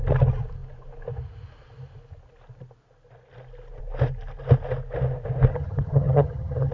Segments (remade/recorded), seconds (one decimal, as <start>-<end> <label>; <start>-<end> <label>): 0.0-5.5 recorded; 5.5-6.7 remade